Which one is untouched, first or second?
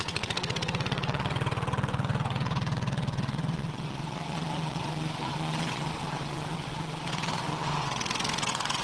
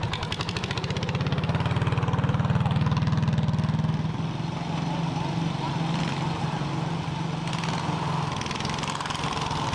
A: second